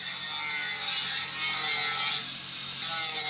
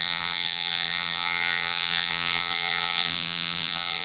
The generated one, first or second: second